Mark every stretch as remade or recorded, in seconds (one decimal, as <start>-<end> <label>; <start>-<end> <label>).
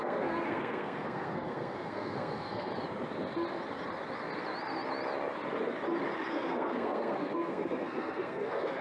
0.0-2.7 remade; 2.7-6.3 recorded; 6.3-8.8 remade